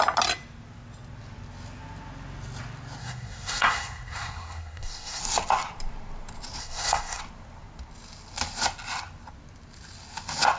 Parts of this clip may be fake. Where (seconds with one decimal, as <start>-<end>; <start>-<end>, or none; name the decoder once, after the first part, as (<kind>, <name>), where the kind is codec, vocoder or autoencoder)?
3.0-5.2 (codec, SNAC); 6.6-7.2